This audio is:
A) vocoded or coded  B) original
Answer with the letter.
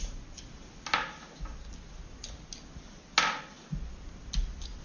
B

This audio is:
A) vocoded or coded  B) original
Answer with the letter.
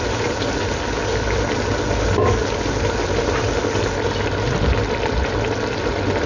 B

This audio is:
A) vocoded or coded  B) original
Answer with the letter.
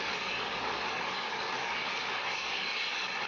A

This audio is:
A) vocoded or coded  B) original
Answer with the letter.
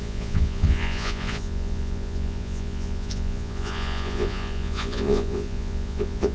A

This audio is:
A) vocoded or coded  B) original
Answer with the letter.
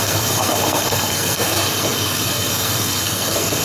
A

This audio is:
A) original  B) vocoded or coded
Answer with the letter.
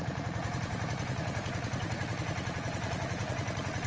B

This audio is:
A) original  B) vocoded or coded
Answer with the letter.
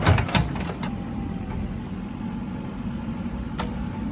A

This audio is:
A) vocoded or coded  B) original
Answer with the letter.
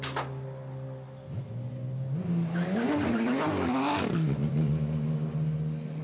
B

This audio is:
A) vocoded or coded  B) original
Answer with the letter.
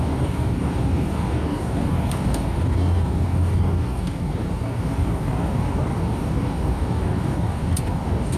A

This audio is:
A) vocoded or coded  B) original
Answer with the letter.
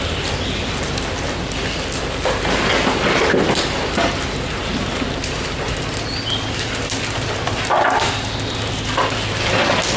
B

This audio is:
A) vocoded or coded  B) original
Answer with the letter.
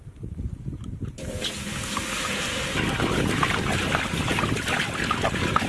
B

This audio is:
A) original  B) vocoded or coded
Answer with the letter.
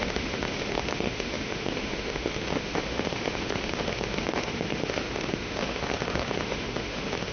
B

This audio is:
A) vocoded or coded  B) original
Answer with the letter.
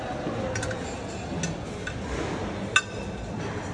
B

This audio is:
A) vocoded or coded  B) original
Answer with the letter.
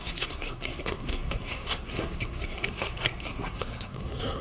A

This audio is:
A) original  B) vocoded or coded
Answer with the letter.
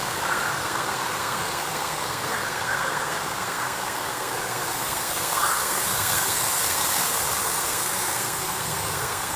B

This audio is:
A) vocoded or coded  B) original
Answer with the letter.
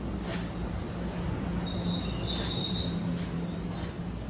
B